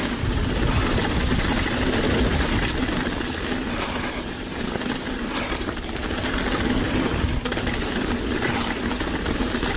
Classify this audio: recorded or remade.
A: recorded